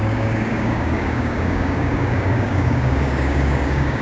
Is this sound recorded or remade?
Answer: remade